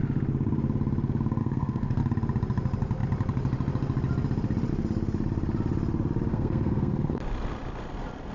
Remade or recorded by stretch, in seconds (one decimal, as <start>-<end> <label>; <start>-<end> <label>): 0.0-1.4 recorded; 1.4-2.0 remade; 2.0-6.3 recorded; 6.3-7.2 remade; 7.2-8.3 recorded